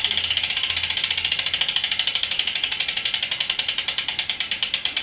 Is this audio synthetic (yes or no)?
no